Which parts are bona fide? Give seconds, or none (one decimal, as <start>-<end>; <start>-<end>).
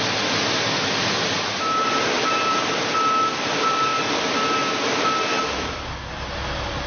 0.0-6.9